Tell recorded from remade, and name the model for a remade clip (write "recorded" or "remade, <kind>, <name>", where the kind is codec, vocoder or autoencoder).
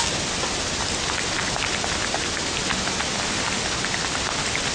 recorded